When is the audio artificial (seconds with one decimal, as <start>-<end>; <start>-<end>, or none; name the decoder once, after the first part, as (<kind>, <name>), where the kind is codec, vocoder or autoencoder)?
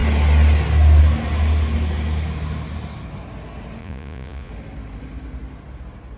3.8-4.5 (vocoder, Vocos)